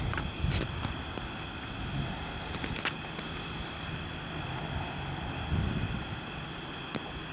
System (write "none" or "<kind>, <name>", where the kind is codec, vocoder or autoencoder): none